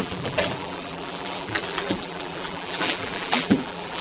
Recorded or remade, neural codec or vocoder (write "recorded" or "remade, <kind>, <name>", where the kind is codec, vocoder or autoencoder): remade, vocoder, BigVGAN v2